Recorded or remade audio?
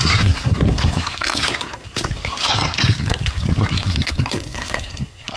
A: remade